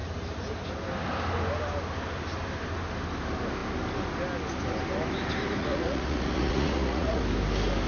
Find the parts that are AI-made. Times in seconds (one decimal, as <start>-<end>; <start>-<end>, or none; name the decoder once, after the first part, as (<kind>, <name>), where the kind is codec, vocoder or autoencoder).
5.6-7.2 (vocoder, Vocos)